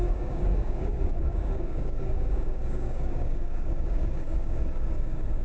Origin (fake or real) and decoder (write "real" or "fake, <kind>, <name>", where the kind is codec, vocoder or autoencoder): fake, codec, DAC